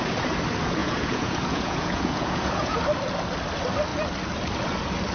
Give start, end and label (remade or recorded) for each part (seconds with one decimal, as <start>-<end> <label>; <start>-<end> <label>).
0.0-0.8 recorded; 0.8-2.8 remade; 2.8-5.1 recorded